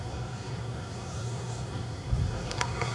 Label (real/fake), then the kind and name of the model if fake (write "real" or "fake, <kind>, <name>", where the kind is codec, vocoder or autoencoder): fake, codec, SNAC